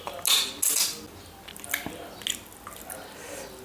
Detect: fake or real real